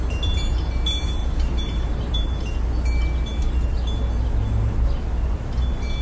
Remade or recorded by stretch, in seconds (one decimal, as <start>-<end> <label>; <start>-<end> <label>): 0.0-1.2 recorded; 1.2-2.4 remade; 2.4-6.0 recorded

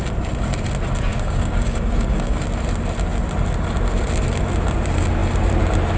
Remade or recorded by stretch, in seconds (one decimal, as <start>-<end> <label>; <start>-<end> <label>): 0.0-1.1 recorded; 1.1-2.4 remade; 2.4-6.0 recorded

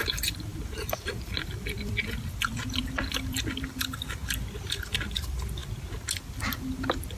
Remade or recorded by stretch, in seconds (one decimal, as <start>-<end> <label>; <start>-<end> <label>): 0.0-4.2 remade; 4.2-5.1 recorded; 5.1-5.6 remade; 5.6-6.3 recorded; 6.3-7.2 remade

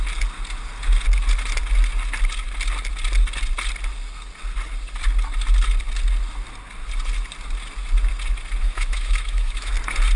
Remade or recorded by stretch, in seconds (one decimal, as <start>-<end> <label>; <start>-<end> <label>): 0.0-8.6 recorded; 8.6-9.7 remade; 9.7-10.2 recorded